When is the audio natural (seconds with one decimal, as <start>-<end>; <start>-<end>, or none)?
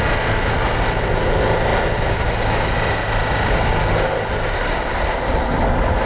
0.0-6.1